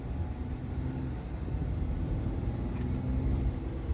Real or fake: real